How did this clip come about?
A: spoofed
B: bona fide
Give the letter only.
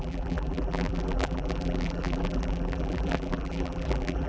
A